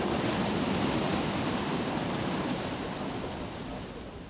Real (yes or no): no